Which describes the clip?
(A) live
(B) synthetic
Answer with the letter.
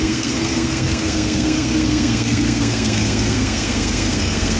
B